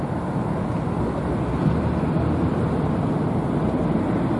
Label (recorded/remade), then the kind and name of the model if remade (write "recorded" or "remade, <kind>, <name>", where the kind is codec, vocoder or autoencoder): recorded